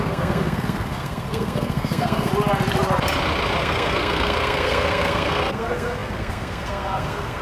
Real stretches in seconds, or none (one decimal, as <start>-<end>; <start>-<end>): 2.3-3.6